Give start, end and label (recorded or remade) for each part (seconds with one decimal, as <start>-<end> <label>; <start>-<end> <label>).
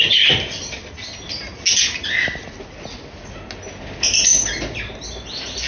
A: 0.0-5.7 recorded